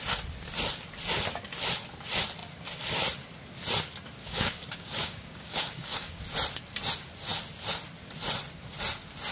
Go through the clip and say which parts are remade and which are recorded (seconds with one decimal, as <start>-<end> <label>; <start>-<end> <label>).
0.0-4.2 recorded; 4.2-6.2 remade; 6.2-9.3 recorded